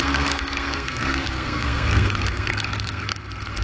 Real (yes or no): no